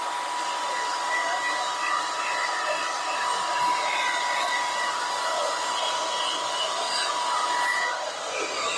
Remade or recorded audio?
recorded